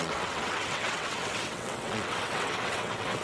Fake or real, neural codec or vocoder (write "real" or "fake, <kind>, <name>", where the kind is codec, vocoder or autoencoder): fake, vocoder, WaveNeXt